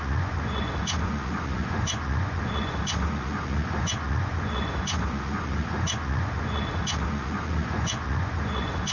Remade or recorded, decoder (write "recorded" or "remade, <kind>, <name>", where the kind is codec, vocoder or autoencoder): remade, vocoder, Vocos